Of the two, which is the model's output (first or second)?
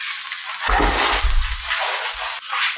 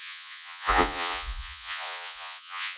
second